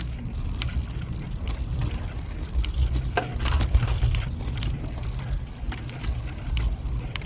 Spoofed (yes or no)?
no